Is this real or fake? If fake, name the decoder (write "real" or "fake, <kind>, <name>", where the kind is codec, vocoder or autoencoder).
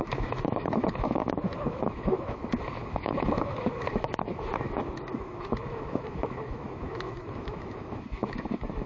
fake, autoencoder, DAC-VAE